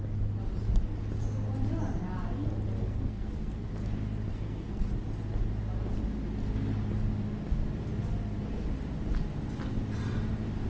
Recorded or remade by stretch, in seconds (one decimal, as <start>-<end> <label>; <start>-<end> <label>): 0.0-2.8 recorded; 2.8-3.7 remade; 3.7-4.3 recorded; 4.3-4.9 remade; 4.9-10.7 recorded